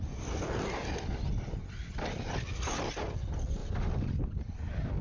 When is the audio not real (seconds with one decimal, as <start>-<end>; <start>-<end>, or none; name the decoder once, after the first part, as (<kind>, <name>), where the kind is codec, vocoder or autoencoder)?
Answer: none